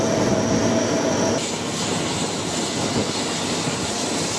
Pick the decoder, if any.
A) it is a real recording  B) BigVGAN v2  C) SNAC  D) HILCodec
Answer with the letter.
A